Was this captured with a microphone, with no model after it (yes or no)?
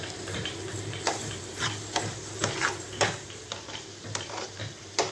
no